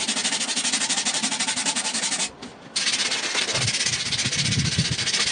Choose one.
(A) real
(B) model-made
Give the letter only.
A